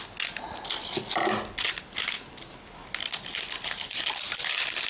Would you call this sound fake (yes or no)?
no